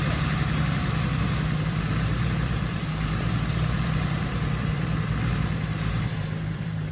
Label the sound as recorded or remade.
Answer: remade